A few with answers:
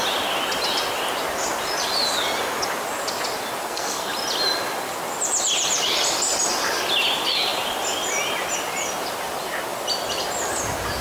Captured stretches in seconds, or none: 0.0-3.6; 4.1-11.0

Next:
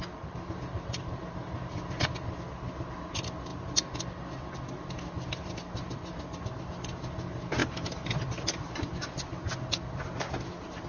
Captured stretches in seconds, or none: 0.0-7.6; 8.2-10.9